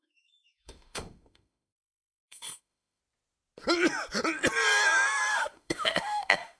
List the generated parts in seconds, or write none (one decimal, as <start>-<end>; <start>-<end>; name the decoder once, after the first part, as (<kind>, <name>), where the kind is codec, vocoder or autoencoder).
0.0-3.0 (autoencoder, DAC-VAE); 5.3-6.6